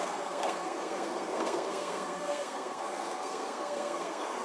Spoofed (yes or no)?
yes